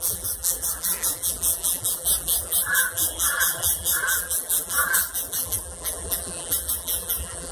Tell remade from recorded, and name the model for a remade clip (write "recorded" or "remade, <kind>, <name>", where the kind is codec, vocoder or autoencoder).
remade, vocoder, BigVGAN v2